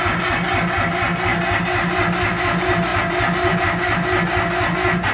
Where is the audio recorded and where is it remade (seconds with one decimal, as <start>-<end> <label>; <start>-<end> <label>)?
0.0-2.9 recorded; 2.9-3.6 remade; 3.6-5.1 recorded